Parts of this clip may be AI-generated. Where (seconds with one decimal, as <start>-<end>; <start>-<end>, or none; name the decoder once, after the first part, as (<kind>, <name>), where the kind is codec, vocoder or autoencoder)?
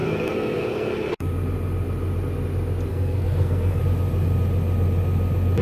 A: 0.0-1.3 (codec, SNAC); 2.9-3.8